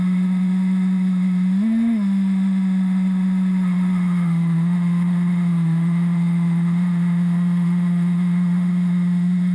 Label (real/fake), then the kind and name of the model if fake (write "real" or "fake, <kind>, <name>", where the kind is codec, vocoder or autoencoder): fake, autoencoder, DAC-VAE